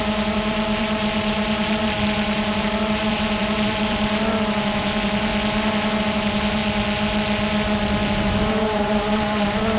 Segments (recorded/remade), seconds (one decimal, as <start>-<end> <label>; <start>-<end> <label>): 0.0-5.3 remade; 5.3-6.0 recorded; 6.0-6.6 remade; 6.6-8.1 recorded; 8.1-9.8 remade